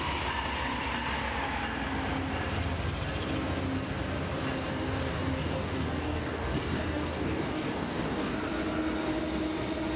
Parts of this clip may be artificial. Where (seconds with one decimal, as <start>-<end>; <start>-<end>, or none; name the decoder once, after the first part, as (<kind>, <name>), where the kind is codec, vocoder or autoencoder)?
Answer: 4.7-8.3 (codec, DAC)